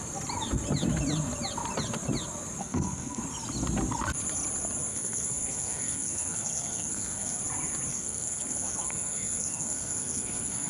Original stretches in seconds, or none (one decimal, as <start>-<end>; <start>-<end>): 0.0-2.6; 3.2-4.9; 7.4-7.9